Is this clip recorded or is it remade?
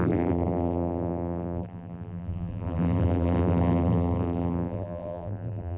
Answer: remade